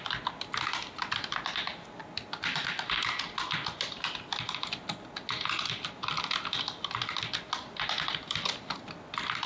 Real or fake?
real